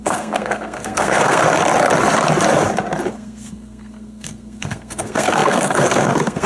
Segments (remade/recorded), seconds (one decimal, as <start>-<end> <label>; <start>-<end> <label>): 0.0-1.4 remade; 1.4-3.1 recorded; 3.1-6.5 remade

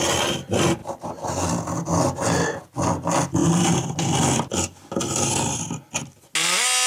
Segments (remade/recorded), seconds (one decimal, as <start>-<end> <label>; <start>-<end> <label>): 0.0-6.9 recorded